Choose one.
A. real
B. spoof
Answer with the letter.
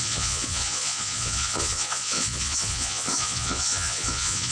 B